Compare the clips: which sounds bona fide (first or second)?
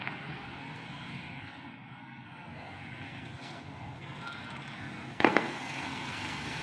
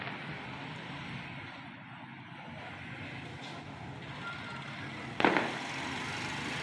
second